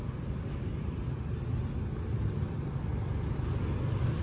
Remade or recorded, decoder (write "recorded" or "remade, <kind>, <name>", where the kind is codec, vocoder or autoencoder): recorded